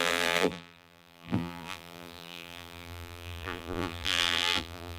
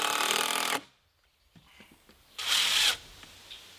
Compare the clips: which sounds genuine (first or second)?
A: second